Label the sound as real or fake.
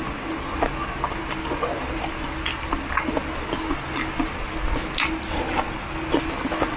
real